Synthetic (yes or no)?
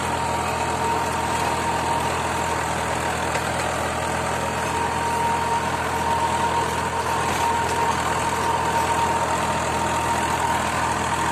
no